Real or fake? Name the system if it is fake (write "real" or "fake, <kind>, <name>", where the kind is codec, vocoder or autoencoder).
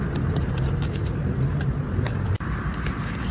real